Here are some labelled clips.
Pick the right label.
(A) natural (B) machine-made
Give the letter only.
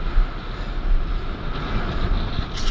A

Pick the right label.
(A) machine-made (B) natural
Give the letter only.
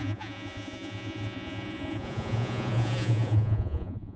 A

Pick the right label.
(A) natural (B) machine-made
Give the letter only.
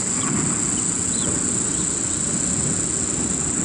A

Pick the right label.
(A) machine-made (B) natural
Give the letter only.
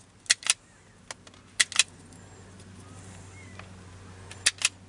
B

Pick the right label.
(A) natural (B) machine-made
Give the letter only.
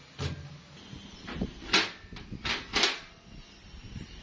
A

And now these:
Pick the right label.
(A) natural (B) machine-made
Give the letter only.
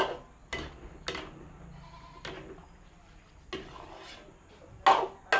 A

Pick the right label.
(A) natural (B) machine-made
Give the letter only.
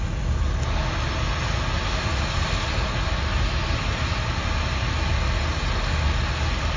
A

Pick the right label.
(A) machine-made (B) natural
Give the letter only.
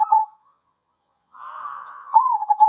A